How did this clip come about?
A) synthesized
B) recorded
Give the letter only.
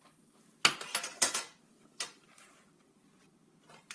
B